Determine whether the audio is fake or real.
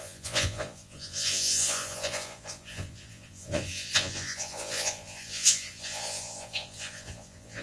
fake